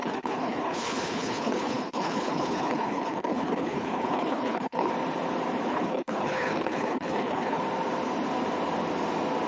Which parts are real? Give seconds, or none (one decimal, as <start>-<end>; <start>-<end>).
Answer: 4.9-5.7; 7.6-9.5